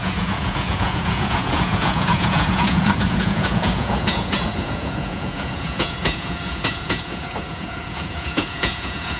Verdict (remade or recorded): remade